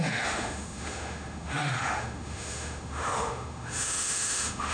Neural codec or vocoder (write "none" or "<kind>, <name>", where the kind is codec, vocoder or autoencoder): autoencoder, DAC-VAE